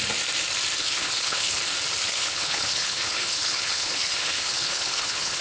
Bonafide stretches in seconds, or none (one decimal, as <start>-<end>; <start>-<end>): 0.0-0.8; 1.6-2.0